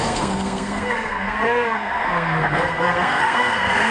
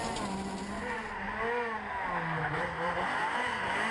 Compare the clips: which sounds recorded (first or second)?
second